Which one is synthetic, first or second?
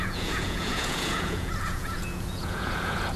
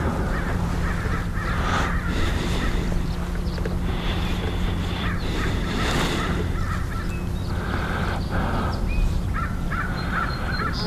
first